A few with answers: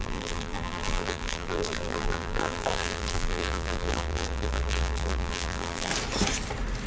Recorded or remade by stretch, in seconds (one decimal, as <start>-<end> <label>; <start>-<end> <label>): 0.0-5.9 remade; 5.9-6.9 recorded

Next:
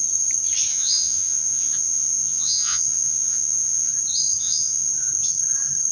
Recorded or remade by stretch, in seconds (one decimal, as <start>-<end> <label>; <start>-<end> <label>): 0.0-0.7 recorded; 0.7-3.9 remade; 3.9-4.4 recorded; 4.4-4.9 remade; 4.9-5.9 recorded

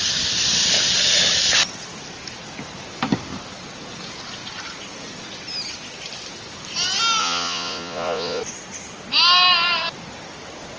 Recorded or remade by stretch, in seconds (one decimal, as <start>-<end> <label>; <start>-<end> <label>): 0.0-7.2 recorded; 7.2-8.4 remade; 8.4-10.8 recorded

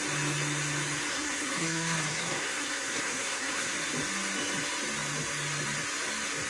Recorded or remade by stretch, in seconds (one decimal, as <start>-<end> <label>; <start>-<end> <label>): 0.0-1.1 recorded; 1.1-3.7 remade; 3.7-6.5 recorded